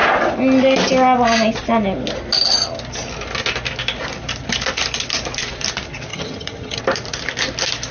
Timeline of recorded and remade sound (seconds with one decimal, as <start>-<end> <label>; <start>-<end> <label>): 0.0-6.1 recorded; 6.1-6.8 remade; 6.8-7.9 recorded